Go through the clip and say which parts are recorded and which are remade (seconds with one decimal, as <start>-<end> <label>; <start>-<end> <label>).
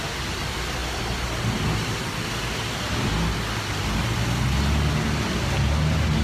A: 0.0-6.2 recorded